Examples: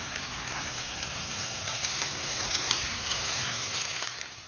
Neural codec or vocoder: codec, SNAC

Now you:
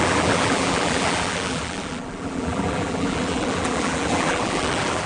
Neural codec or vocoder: vocoder, BigVGAN v2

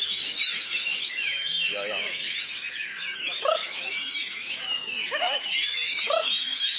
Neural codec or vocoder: autoencoder, DAC-VAE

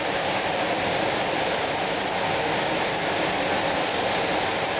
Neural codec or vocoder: none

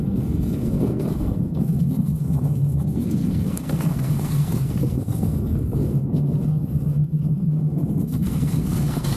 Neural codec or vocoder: codec, SNAC